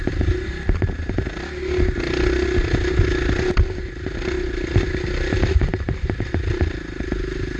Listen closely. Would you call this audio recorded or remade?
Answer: recorded